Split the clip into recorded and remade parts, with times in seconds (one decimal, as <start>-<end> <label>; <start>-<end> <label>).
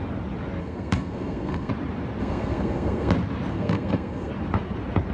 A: 0.0-0.6 recorded; 0.6-1.7 remade; 1.7-2.2 recorded; 2.2-3.1 remade; 3.1-3.5 recorded; 3.5-4.3 remade; 4.3-5.1 recorded